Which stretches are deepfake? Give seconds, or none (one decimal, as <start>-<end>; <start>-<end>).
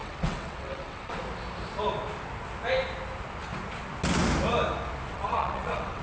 0.0-1.2; 5.1-6.0